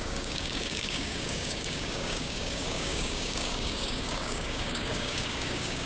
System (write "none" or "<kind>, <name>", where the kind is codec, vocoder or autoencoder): codec, DAC